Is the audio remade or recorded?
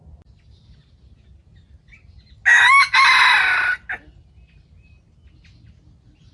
recorded